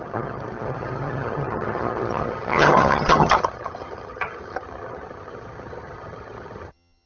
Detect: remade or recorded remade